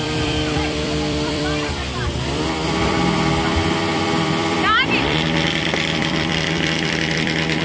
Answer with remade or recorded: remade